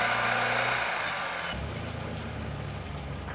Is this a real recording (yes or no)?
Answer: yes